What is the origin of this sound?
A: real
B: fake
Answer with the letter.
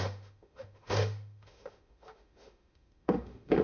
B